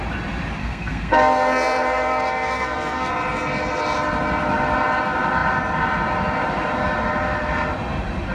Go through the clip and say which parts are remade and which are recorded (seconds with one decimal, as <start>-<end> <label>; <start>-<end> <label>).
0.0-0.6 recorded; 0.6-3.1 remade; 3.1-8.3 recorded